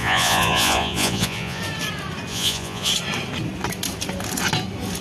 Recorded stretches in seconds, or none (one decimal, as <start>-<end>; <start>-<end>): 1.6-2.3; 2.9-5.0